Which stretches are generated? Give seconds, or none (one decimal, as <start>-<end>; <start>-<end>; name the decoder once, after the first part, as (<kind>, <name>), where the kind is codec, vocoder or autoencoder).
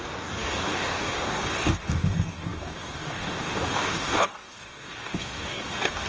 0.0-6.1 (codec, DAC)